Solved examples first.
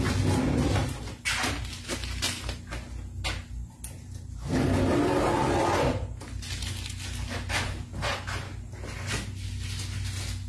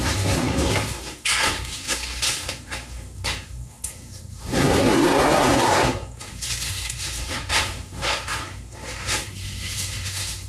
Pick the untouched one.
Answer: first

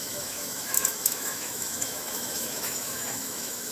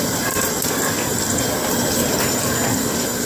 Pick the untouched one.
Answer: second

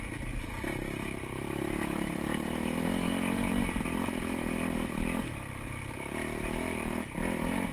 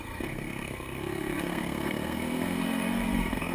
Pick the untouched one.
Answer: first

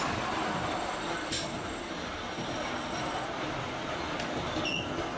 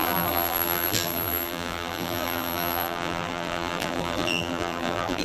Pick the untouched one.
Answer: first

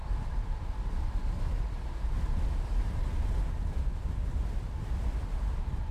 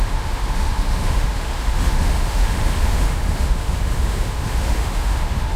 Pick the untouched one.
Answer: first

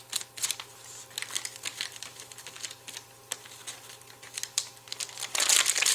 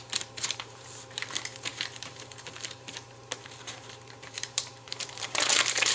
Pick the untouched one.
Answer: first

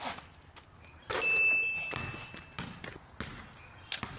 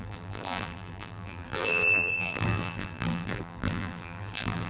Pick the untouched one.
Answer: first